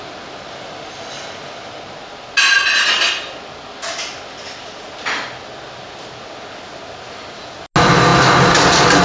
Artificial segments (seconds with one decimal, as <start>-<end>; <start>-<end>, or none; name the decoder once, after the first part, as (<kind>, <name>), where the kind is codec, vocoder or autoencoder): none

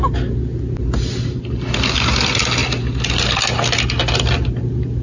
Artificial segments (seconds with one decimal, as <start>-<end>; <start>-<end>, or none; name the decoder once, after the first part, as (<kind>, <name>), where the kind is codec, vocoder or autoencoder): none

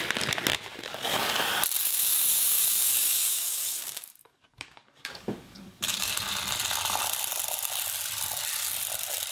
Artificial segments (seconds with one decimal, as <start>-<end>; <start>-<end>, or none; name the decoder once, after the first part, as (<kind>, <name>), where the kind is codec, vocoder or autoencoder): 0.7-1.2 (codec, DAC); 1.8-6.1

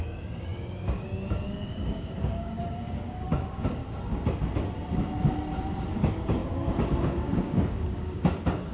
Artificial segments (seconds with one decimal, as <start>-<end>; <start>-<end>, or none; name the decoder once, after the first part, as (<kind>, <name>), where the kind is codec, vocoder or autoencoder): 0.0-3.8 (codec, DAC); 5.9-8.7

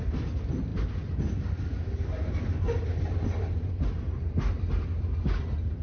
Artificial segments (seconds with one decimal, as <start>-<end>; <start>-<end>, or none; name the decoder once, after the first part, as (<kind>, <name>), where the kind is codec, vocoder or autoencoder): none

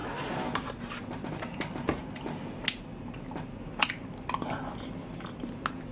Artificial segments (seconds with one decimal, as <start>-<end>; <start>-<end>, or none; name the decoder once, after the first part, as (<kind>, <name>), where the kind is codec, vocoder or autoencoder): none

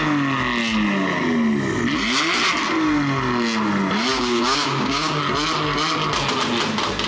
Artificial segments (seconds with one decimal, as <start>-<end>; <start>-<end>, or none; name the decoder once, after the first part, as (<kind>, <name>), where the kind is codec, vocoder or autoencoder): 4.1-5.2 (codec, DAC)